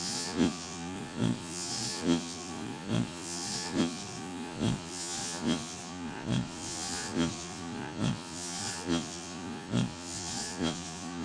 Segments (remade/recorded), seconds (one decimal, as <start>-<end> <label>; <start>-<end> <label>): 0.0-11.2 remade